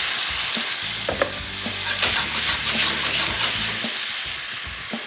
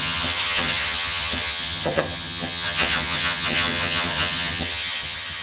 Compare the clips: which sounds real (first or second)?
first